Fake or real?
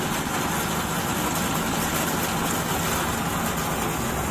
real